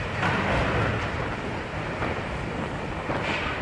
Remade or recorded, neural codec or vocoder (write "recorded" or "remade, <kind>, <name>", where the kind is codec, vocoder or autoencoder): recorded